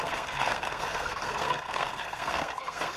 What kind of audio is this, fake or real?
fake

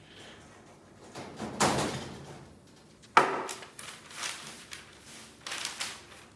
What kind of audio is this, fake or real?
real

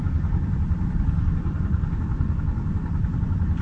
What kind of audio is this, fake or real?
real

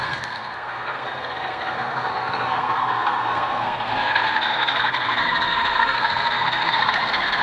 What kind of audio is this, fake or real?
fake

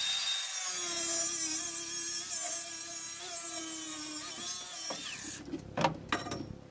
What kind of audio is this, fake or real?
real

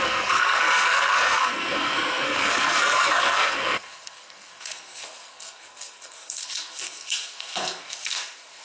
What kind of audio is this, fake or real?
fake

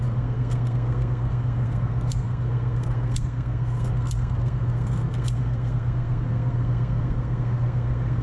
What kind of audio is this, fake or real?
fake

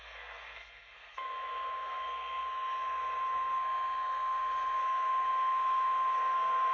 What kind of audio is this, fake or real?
fake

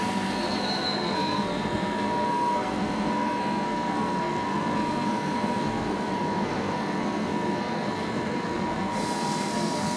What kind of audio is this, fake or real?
fake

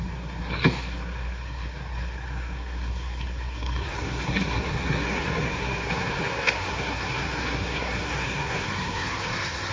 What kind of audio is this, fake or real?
fake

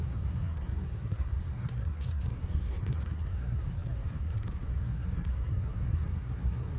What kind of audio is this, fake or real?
fake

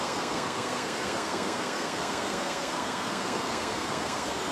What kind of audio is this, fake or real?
fake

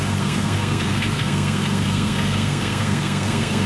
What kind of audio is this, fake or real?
fake